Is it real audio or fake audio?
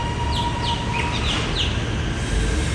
real